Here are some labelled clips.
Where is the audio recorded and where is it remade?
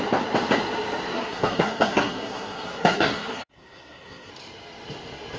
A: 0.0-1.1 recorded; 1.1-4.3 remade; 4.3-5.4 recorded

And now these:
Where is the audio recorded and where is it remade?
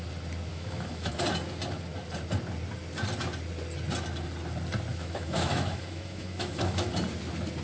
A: 0.0-0.5 recorded; 0.5-1.1 remade; 1.1-4.9 recorded; 4.9-6.9 remade; 6.9-7.6 recorded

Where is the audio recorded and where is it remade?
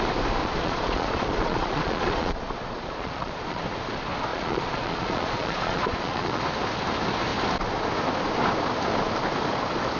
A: 0.0-0.4 recorded; 0.4-3.6 remade; 3.6-4.3 recorded; 4.3-6.4 remade; 6.4-10.0 recorded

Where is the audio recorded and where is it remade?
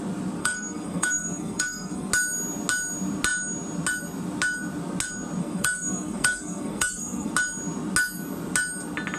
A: 0.0-0.4 recorded; 0.4-2.1 remade; 2.1-5.4 recorded; 5.4-7.3 remade; 7.3-9.2 recorded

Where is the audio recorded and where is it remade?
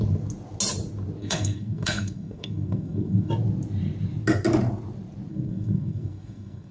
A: 0.0-1.2 recorded; 1.2-3.3 remade; 3.3-5.3 recorded; 5.3-6.7 remade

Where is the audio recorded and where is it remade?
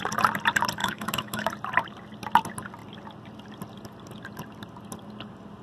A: 0.0-0.8 recorded; 0.8-1.5 remade; 1.5-5.6 recorded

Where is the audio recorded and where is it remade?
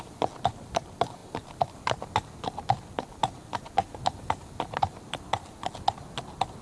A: 0.0-6.6 recorded